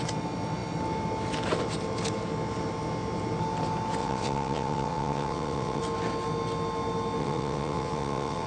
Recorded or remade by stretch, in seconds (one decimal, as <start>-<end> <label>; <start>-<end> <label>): 0.0-4.0 recorded; 4.0-5.8 remade; 5.8-7.2 recorded; 7.2-8.5 remade